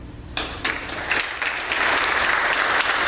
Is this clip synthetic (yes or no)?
yes